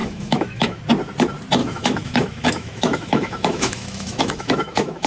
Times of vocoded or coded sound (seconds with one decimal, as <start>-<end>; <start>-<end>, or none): 0.0-0.8; 1.6-5.1